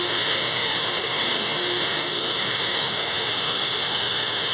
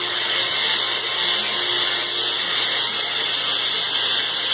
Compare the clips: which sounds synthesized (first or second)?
first